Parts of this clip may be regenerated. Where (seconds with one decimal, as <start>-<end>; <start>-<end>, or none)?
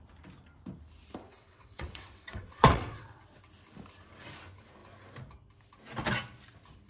1.3-3.5